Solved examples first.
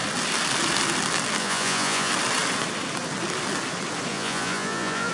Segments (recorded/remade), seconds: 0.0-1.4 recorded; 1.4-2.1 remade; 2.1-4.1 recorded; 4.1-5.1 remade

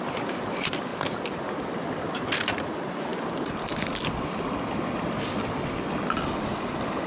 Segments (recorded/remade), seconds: 0.0-0.9 remade; 0.9-2.3 recorded; 2.3-3.1 remade; 3.1-7.1 recorded

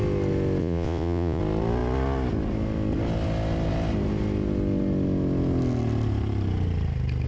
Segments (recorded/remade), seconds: 0.0-0.6 recorded; 0.6-1.4 remade; 1.4-7.3 recorded

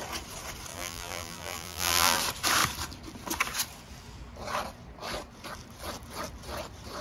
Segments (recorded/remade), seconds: 0.0-0.7 recorded; 0.7-2.2 remade; 2.2-7.0 recorded

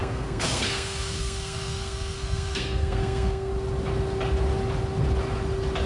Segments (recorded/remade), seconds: 0.0-3.5 remade; 3.5-5.9 recorded